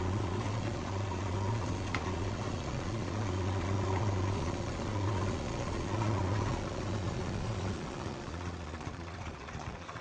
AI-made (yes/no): yes